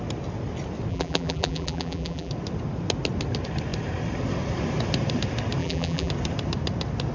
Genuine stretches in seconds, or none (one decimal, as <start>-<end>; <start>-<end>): 0.0-0.9; 2.3-5.6; 6.1-7.1